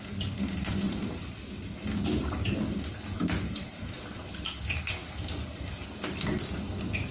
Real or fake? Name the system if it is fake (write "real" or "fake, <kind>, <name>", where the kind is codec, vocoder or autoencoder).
real